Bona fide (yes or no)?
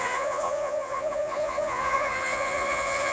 no